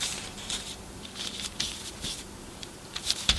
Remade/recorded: remade